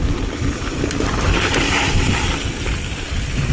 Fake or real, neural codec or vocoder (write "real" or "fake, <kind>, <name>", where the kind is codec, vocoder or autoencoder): real